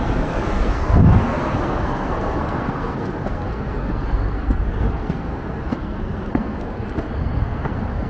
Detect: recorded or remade remade